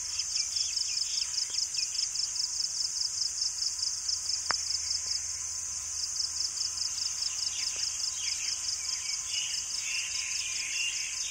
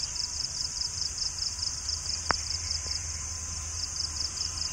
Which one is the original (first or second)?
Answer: first